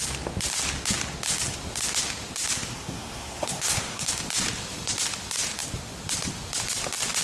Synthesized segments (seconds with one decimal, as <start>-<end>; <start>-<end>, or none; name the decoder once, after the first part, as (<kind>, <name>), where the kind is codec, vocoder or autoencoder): 2.7-4.1 (codec, SNAC)